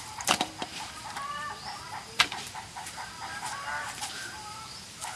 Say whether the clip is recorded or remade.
remade